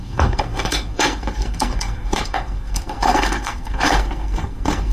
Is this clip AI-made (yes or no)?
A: yes